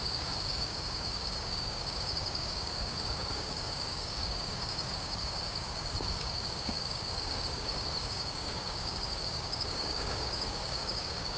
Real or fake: fake